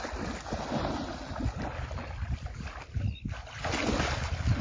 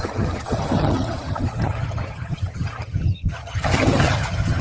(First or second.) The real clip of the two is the first